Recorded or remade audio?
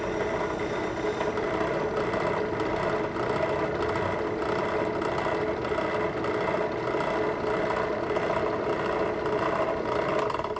recorded